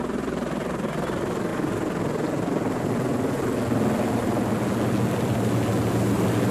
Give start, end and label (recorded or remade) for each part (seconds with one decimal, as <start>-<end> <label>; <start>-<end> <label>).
0.0-6.5 recorded